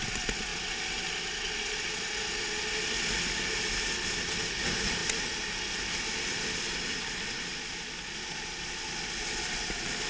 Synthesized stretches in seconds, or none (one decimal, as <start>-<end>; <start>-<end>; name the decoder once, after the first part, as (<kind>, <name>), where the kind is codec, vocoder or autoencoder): none